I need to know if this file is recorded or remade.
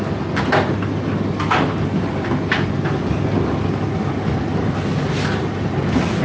recorded